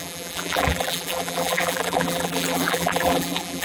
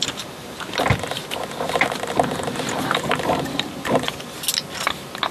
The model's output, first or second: first